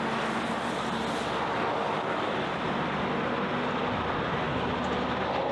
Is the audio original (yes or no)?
yes